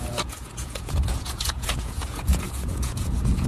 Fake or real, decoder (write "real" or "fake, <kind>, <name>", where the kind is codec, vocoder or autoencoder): fake, vocoder, Vocos